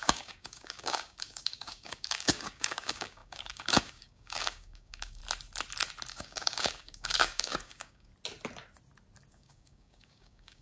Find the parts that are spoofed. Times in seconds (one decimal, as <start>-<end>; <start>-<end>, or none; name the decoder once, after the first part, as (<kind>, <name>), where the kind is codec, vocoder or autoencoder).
0.0-5.2 (codec, DAC); 6.1-8.1; 9.3-10.6